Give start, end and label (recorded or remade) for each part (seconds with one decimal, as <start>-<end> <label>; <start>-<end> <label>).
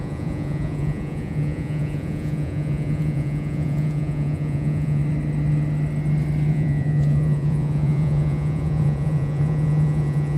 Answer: 0.0-5.0 remade; 5.0-6.5 recorded; 6.5-10.4 remade